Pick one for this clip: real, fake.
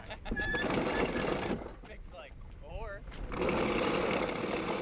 real